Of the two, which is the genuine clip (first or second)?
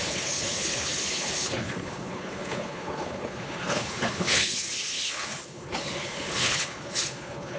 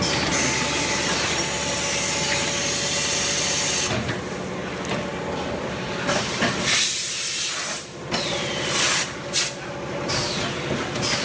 second